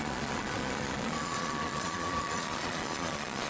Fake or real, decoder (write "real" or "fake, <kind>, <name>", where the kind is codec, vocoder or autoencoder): fake, vocoder, Vocos